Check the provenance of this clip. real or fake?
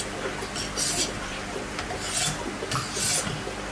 real